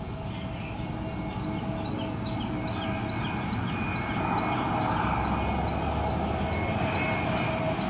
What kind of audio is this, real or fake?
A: real